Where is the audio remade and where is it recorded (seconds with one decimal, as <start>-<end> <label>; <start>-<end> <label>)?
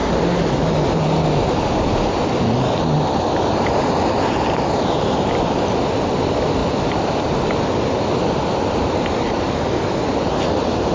0.0-10.9 recorded